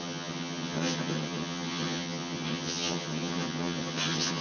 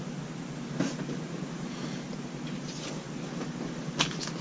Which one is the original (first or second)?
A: second